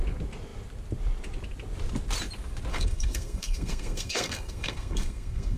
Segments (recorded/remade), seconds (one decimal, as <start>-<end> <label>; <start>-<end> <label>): 0.0-2.7 recorded; 2.7-5.6 remade